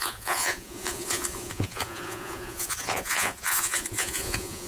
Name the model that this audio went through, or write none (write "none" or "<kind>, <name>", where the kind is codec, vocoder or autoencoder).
vocoder, Vocos